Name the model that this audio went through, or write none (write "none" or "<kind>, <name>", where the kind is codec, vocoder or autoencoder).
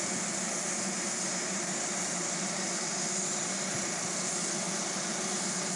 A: none